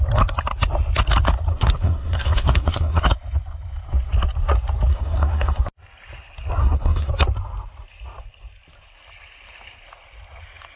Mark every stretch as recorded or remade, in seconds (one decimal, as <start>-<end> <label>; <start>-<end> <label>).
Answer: 0.0-1.5 recorded; 1.5-3.0 remade; 3.0-4.9 recorded; 4.9-5.6 remade; 5.6-6.6 recorded; 6.6-7.1 remade; 7.1-10.8 recorded